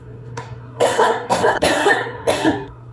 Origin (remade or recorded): remade